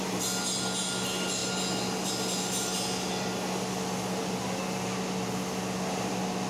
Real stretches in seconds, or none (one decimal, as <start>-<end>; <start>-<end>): 0.0-6.5